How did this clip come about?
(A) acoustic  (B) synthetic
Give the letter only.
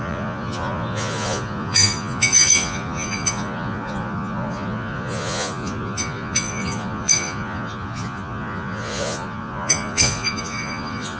B